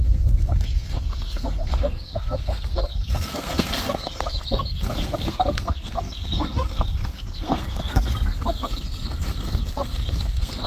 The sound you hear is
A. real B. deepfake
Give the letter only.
B